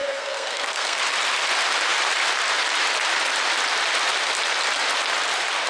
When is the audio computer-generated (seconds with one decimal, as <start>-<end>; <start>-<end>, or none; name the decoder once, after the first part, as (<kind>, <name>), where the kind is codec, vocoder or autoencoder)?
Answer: 0.0-1.0 (codec, SNAC)